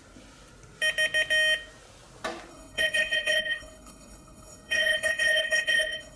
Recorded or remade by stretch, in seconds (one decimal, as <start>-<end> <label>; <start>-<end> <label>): 0.0-2.5 recorded; 2.5-6.2 remade